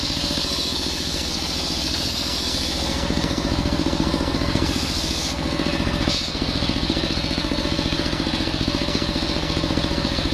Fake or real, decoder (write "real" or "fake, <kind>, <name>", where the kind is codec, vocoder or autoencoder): fake, codec, SNAC